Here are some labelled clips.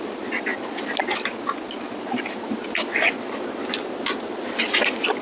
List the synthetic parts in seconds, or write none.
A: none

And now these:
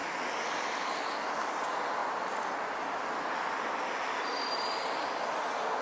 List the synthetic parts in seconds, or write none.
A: none

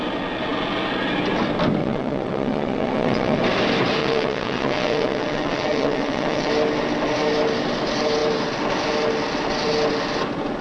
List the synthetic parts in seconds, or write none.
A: 1.8-3.4 (vocoder, WaveNeXt); 4.0-6.5

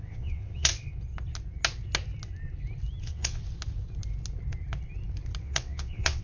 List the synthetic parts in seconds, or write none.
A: 0.0-0.7 (vocoder, WaveNeXt); 3.0-3.4; 5.4-6.2

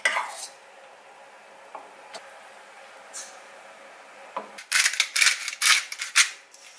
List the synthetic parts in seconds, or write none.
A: none

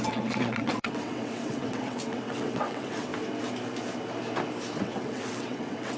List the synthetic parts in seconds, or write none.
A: 0.0-3.1 (vocoder, WaveNeXt); 4.8-6.0

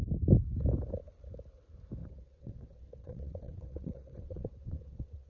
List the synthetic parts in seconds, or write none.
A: 2.0-5.3 (vocoder, WaveNeXt)